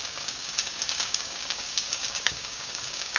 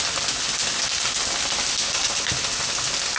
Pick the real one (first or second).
second